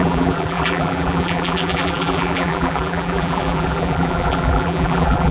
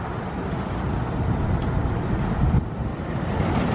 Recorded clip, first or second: second